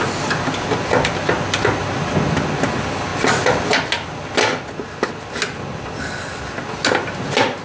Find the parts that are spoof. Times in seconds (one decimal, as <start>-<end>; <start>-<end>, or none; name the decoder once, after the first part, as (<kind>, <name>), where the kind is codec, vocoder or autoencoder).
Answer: none